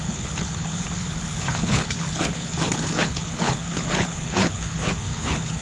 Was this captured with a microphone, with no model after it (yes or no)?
no